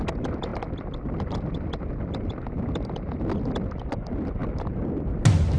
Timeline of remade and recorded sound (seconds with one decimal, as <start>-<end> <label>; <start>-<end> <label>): 0.0-5.6 recorded